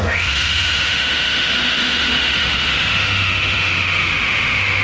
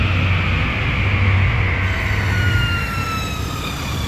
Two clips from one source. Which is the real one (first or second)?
second